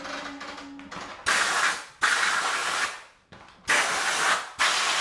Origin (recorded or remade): recorded